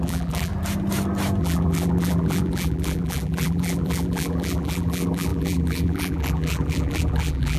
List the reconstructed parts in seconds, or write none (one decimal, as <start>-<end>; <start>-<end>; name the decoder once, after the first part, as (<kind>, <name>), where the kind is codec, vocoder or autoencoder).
0.0-0.5 (vocoder, BigVGAN v2); 1.4-7.6